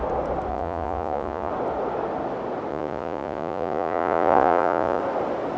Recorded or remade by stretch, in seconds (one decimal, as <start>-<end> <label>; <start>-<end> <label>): 0.0-0.5 recorded; 0.5-1.5 remade; 1.5-2.7 recorded; 2.7-5.0 remade; 5.0-5.6 recorded